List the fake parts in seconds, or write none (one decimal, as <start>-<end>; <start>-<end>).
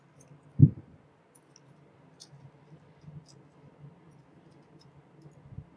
none